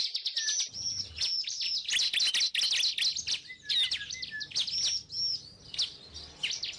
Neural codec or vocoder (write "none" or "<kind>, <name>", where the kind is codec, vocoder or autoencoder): none